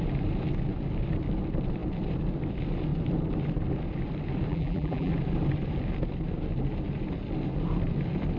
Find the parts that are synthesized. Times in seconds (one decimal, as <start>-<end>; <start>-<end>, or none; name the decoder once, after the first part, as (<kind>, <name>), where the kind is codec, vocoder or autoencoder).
4.5-5.1 (vocoder, BigVGAN v2)